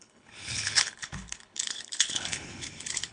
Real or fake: fake